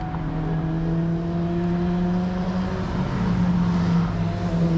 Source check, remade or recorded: recorded